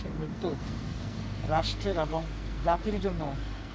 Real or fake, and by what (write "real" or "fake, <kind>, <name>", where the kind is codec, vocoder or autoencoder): fake, codec, SNAC